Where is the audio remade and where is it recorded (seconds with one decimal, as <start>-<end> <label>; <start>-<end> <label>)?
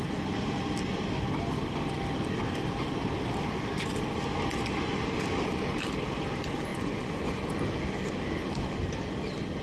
0.0-6.7 recorded; 6.7-7.5 remade; 7.5-9.6 recorded